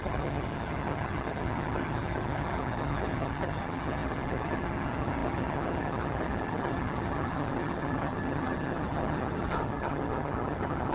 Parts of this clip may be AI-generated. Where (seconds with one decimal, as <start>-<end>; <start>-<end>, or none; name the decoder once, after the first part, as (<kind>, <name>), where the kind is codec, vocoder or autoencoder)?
0.0-10.9 (vocoder, HiFi-GAN)